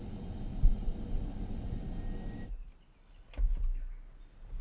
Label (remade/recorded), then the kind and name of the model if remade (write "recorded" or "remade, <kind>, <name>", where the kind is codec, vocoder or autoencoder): recorded